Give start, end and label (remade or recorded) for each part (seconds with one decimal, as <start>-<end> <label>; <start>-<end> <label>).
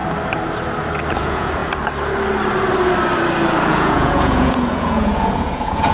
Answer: 0.0-1.1 recorded; 1.1-1.6 remade; 1.6-3.7 recorded; 3.7-5.9 remade